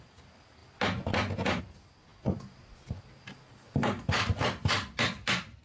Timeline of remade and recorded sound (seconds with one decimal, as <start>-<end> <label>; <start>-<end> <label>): 0.0-2.1 recorded; 2.1-3.3 remade; 3.3-5.6 recorded